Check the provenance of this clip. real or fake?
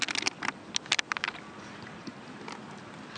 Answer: real